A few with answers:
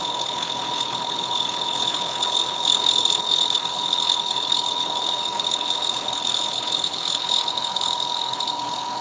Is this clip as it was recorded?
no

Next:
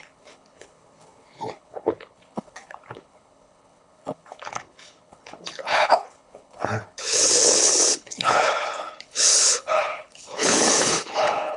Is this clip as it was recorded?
no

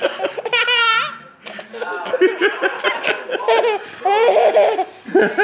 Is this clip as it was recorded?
yes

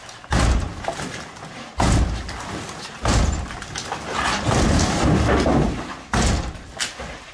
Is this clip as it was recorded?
yes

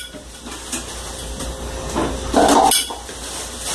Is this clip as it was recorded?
yes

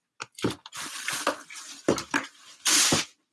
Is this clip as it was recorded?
yes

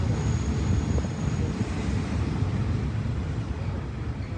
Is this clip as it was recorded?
yes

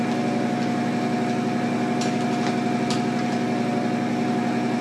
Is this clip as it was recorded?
yes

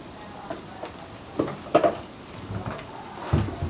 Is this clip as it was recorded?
yes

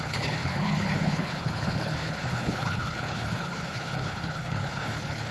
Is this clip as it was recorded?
no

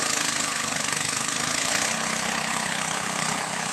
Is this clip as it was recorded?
no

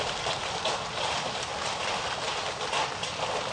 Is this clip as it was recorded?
yes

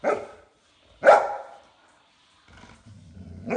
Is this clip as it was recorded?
yes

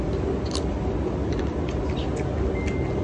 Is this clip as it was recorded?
yes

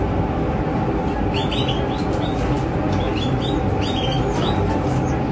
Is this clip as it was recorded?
yes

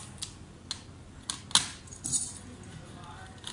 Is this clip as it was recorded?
yes